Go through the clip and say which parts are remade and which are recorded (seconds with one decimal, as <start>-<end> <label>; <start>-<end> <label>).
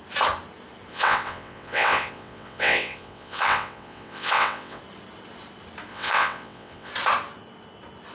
0.0-0.9 recorded; 0.9-4.8 remade; 4.8-5.9 recorded; 5.9-6.9 remade; 6.9-8.1 recorded